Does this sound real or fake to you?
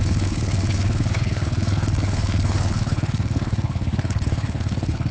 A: fake